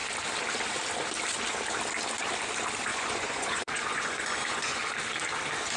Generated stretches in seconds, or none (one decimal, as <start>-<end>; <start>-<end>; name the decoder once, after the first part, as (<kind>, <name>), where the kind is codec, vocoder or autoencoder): 2.9-4.8 (vocoder, Vocos)